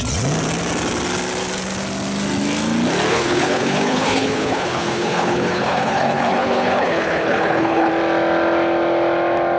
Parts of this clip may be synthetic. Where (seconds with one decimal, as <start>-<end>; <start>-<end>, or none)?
3.1-7.9